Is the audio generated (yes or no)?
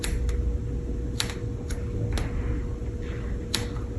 no